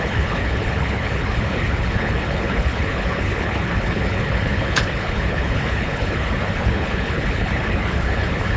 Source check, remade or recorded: remade